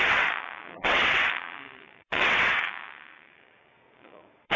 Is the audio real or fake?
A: fake